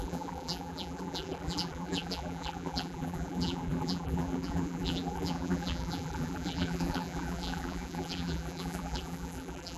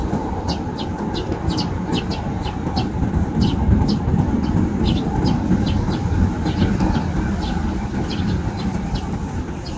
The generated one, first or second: first